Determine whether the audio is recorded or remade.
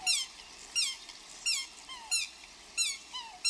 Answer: recorded